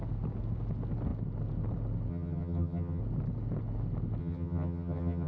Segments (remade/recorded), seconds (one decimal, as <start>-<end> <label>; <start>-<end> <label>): 0.0-2.1 recorded; 2.1-3.0 remade; 3.0-4.2 recorded; 4.2-5.3 remade